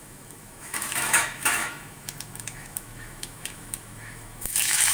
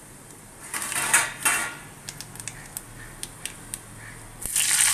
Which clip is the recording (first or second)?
second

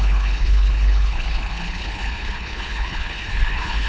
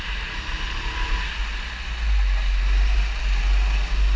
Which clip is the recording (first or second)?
second